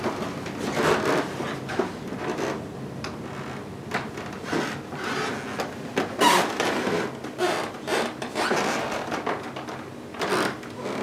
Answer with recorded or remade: recorded